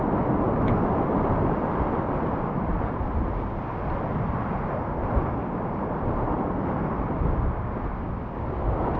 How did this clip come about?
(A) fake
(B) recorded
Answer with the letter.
B